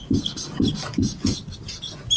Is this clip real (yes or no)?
yes